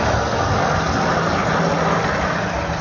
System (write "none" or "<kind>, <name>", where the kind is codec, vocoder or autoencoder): none